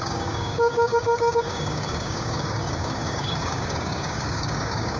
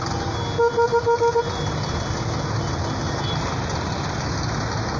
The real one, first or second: second